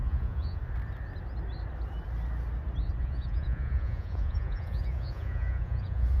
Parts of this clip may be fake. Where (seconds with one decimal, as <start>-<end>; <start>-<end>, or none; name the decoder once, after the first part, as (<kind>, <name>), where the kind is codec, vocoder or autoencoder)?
0.0-0.6 (vocoder, Vocos); 3.0-6.2